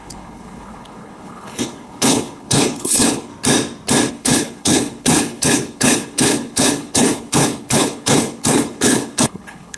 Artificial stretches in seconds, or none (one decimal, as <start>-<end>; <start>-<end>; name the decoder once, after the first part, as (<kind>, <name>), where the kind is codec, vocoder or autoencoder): 0.0-3.3 (codec, HILCodec); 4.1-9.8